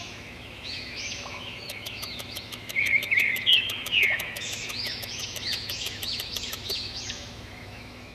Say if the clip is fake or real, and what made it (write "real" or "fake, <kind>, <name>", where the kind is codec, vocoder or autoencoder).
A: fake, autoencoder, DAC-VAE